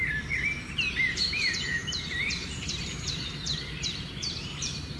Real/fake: fake